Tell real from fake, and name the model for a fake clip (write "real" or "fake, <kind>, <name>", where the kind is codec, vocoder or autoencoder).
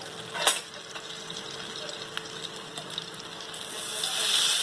real